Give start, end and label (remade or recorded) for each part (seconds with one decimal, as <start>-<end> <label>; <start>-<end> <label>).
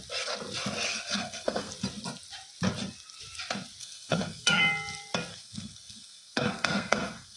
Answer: 0.0-0.9 recorded; 0.9-1.7 remade; 1.7-3.8 recorded; 3.8-4.6 remade; 4.6-5.3 recorded; 5.3-7.4 remade